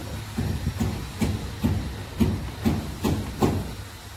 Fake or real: real